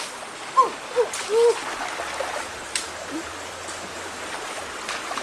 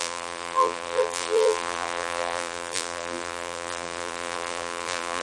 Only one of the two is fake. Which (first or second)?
second